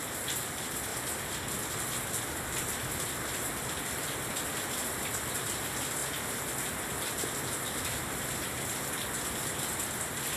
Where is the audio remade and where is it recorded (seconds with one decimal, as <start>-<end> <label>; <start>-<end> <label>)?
0.0-0.9 remade; 0.9-3.1 recorded; 3.1-6.0 remade; 6.0-6.9 recorded; 6.9-10.4 remade